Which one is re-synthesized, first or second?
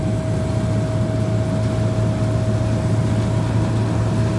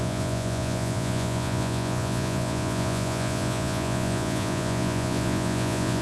second